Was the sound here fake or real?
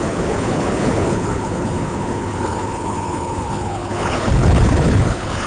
fake